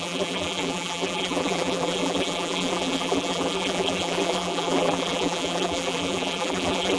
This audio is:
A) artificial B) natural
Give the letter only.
A